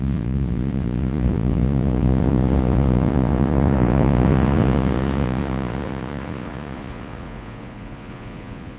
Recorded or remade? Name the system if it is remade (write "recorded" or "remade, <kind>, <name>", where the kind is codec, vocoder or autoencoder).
remade, vocoder, Vocos